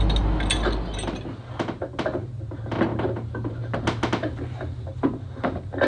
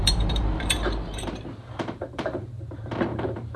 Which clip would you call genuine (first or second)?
first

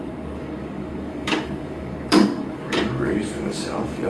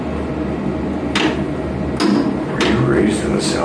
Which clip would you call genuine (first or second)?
second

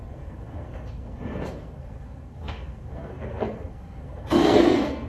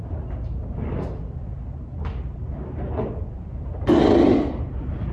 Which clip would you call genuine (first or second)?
second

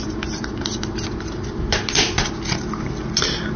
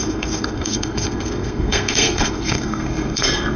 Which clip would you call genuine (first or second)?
first